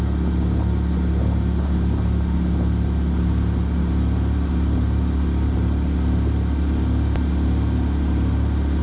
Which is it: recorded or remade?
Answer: recorded